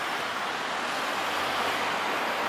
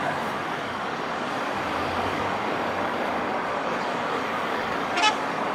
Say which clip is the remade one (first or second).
second